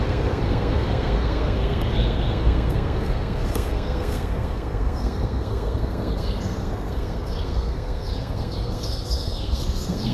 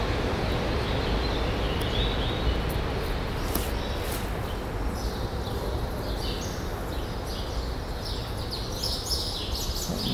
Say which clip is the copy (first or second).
first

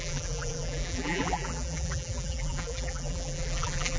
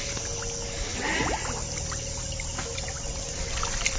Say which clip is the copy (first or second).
first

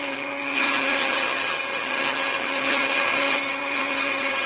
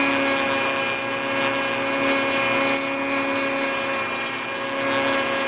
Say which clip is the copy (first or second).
first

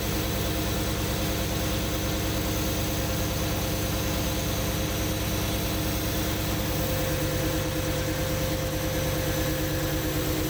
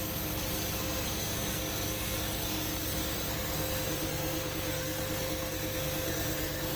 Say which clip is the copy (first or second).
second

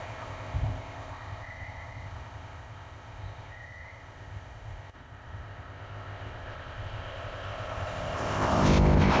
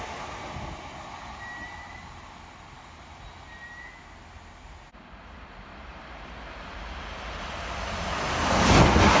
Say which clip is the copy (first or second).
first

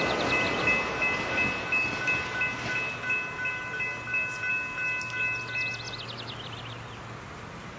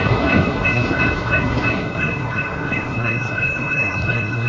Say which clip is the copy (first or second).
second